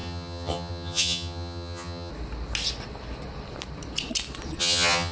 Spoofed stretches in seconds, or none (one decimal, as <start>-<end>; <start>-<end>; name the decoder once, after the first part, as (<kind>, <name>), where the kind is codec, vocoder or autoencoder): 0.0-2.1 (vocoder, HiFi-GAN); 4.6-5.1

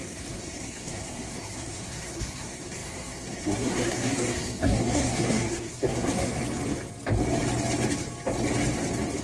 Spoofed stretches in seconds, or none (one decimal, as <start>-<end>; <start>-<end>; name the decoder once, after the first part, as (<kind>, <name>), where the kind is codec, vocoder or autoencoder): 0.0-6.4 (codec, SNAC)

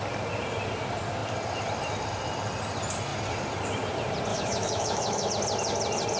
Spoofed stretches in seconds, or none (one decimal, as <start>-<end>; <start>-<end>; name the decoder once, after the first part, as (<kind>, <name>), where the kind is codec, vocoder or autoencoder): 4.3-5.3 (autoencoder, DAC-VAE)

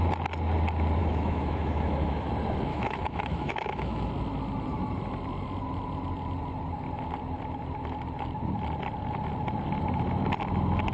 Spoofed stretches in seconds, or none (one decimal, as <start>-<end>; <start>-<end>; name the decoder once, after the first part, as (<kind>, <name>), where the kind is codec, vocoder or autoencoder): 1.0-2.3 (autoencoder, DAC-VAE); 2.7-4.1

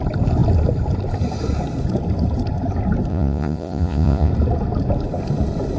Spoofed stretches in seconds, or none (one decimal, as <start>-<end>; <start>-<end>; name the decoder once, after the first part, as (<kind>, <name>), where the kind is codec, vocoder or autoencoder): 3.1-4.3 (vocoder, Vocos)

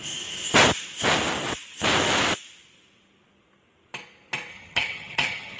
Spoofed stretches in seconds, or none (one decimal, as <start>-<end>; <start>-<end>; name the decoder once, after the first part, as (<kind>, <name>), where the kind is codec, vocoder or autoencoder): 4.5-5.6 (vocoder, HiFi-GAN)

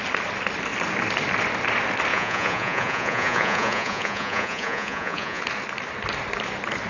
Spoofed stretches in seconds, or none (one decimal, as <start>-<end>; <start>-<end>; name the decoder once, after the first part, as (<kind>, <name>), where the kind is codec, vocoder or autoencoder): 2.1-5.4 (vocoder, Vocos)

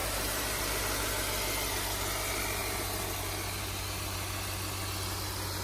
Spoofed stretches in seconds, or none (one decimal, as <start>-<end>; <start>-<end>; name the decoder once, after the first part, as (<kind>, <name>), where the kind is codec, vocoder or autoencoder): 0.0-0.6 (vocoder, BigVGAN v2)